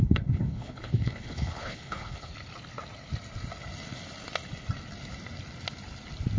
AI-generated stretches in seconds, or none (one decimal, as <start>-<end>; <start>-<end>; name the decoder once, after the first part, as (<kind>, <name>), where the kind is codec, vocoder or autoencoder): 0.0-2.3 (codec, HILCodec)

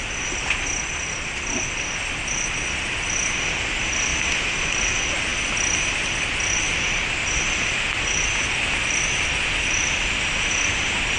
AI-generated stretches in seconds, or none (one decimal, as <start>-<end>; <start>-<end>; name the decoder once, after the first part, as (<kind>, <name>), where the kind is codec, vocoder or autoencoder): none

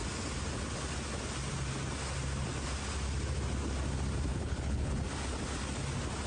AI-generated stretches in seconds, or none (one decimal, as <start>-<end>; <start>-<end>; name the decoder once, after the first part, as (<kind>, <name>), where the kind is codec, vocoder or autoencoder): 4.3-4.9 (codec, HILCodec)

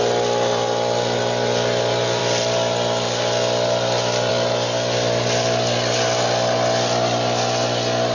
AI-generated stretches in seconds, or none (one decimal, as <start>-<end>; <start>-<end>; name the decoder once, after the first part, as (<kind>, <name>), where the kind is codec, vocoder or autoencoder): none